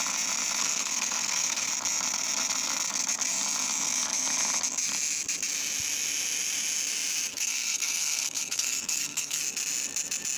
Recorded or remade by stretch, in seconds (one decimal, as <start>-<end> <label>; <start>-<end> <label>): 0.0-0.6 recorded; 0.6-1.7 remade; 1.7-7.3 recorded; 7.3-9.4 remade; 9.4-10.4 recorded